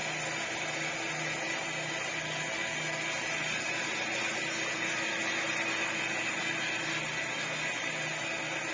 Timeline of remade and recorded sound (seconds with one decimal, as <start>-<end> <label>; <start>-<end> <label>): 0.0-8.7 recorded